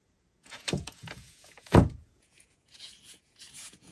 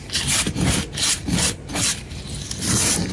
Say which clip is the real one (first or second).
second